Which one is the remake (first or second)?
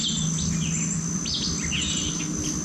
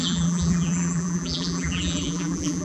second